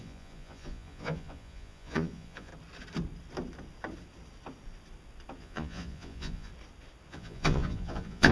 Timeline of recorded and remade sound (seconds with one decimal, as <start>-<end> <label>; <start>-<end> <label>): 0.0-2.5 remade; 2.5-5.4 recorded; 5.4-6.5 remade; 6.5-7.1 recorded; 7.1-8.3 remade